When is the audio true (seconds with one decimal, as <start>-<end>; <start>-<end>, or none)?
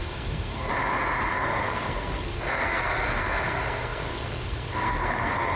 0.7-1.3